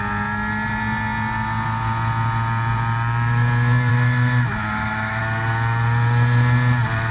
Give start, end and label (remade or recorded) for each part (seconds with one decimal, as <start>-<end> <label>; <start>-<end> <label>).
0.0-3.9 recorded; 3.9-5.2 remade; 5.2-7.1 recorded